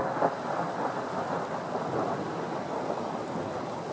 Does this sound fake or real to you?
real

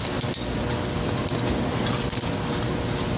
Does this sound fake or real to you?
real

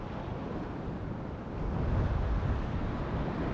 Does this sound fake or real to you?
real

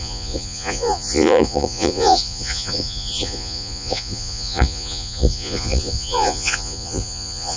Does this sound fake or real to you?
fake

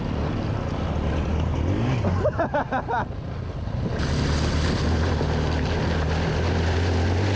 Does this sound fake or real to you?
real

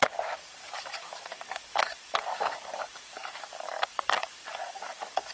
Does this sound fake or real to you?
fake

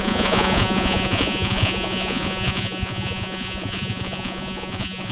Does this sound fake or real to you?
fake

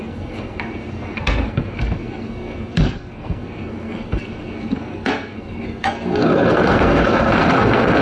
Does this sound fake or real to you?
fake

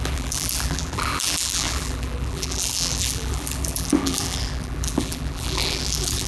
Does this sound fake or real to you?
fake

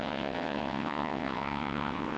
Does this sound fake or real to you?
fake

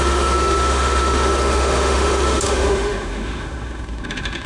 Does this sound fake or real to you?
fake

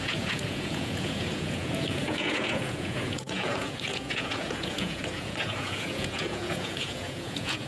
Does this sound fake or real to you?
fake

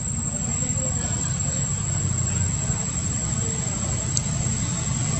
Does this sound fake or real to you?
real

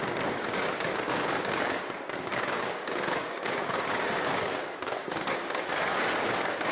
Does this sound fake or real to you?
fake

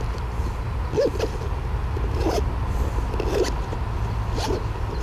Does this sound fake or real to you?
real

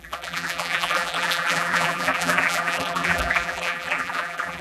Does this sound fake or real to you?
fake